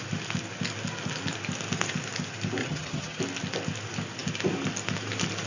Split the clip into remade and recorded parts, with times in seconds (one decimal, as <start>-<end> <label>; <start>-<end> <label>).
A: 0.0-2.6 recorded; 2.6-3.2 remade; 3.2-5.5 recorded